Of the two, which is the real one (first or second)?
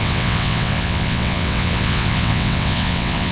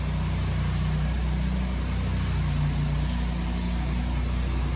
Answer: second